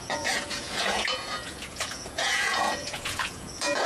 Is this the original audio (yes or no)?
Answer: no